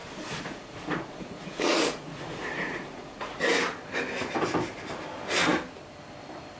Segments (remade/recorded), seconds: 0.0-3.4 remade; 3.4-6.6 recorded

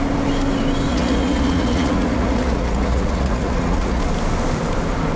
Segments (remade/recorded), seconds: 0.0-0.9 recorded; 0.9-4.0 remade; 4.0-5.2 recorded

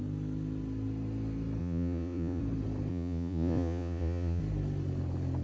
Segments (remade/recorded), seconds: 0.0-1.6 recorded; 1.6-2.4 remade; 2.4-2.9 recorded; 2.9-4.4 remade; 4.4-5.4 recorded

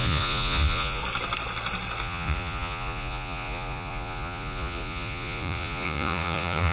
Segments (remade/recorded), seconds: 0.0-1.0 remade; 1.0-2.0 recorded; 2.0-6.7 remade

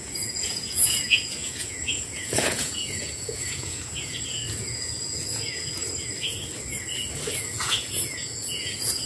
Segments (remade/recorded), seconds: 0.0-5.8 remade; 5.8-7.4 recorded; 7.4-9.1 remade

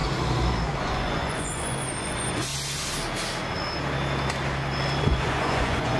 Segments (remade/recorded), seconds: 0.0-0.8 recorded; 0.8-2.5 remade; 2.5-5.0 recorded; 5.0-6.0 remade

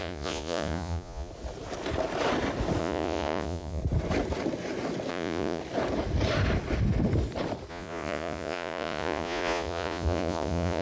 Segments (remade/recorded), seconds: 0.0-1.3 remade; 1.3-2.8 recorded; 2.8-3.8 remade; 3.8-5.1 recorded; 5.1-5.6 remade; 5.6-7.7 recorded; 7.7-10.8 remade

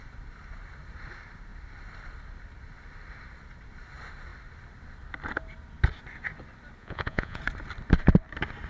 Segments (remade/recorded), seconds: 0.0-6.8 recorded; 6.8-7.4 remade; 7.4-8.7 recorded